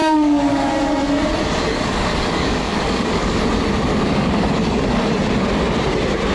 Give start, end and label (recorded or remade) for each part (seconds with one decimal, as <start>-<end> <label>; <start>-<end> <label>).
0.0-0.7 remade; 0.7-1.7 recorded; 1.7-3.4 remade; 3.4-3.9 recorded; 3.9-5.1 remade; 5.1-6.3 recorded